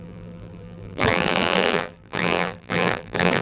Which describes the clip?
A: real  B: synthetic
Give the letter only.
B